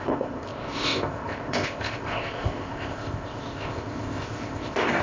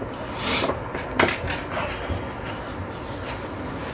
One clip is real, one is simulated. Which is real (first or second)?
second